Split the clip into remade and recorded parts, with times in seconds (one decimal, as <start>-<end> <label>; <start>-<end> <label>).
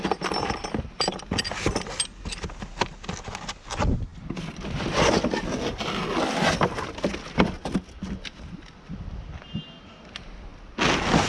0.0-11.3 recorded